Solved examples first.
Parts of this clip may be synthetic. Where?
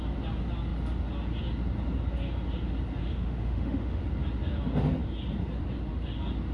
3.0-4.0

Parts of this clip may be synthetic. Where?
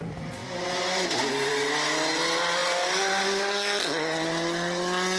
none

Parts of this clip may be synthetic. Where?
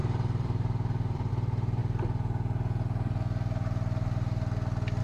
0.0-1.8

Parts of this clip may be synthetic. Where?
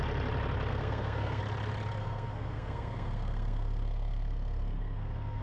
0.7-1.4; 2.0-5.4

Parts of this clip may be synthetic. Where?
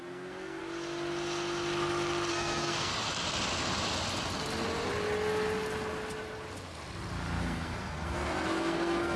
0.0-0.6; 2.3-2.9; 7.4-9.2